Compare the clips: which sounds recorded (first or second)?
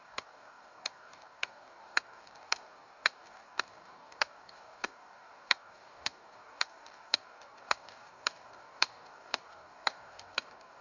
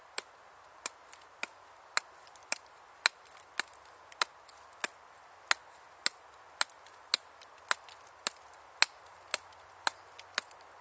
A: second